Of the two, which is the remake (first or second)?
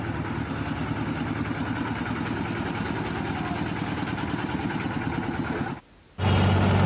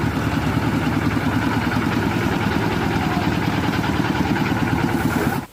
second